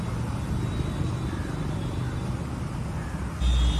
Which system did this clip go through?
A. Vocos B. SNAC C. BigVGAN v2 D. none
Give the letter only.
D